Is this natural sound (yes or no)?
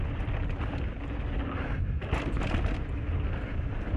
yes